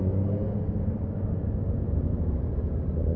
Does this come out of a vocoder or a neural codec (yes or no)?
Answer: no